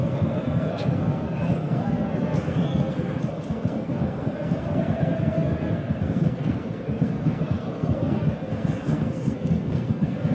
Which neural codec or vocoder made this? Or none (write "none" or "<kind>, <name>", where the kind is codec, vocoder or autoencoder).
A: codec, SNAC